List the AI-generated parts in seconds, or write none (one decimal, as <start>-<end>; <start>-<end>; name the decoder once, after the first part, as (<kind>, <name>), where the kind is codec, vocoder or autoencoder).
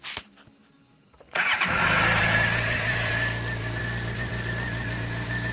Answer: 2.2-3.8 (vocoder, BigVGAN v2)